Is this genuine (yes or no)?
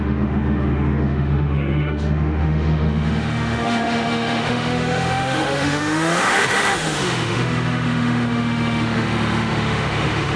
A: no